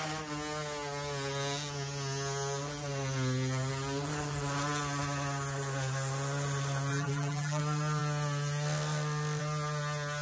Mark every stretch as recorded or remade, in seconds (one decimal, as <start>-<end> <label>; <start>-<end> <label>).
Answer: 0.0-6.9 recorded; 6.9-7.6 remade; 7.6-10.2 recorded